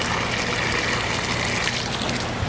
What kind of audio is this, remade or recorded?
recorded